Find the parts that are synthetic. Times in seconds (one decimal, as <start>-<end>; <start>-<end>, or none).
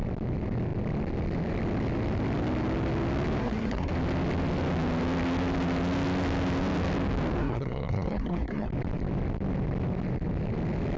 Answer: 3.4-3.9; 7.4-8.7